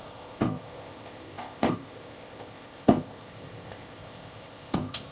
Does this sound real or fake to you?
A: fake